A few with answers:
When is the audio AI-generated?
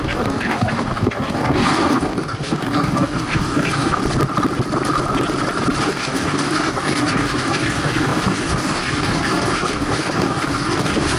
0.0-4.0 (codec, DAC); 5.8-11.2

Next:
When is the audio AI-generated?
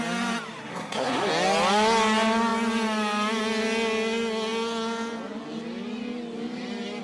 0.7-1.3 (codec, SNAC)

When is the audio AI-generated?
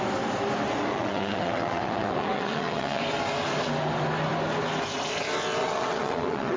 0.9-3.0 (vocoder, WaveNeXt); 5.6-6.6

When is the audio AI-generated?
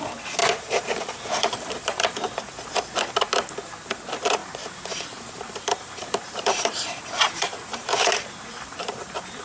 0.4-3.1 (vocoder, BigVGAN v2); 4.4-9.4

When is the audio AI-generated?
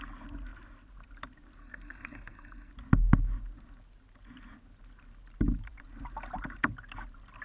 1.6-2.7 (codec, SNAC)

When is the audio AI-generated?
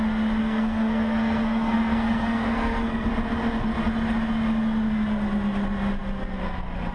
0.4-3.1 (codec, SNAC)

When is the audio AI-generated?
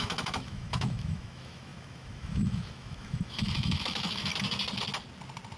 0.0-4.3 (autoencoder, DAC-VAE)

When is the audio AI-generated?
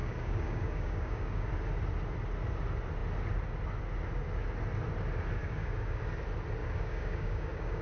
0.0-1.5 (codec, DAC); 5.4-6.0; 6.6-7.8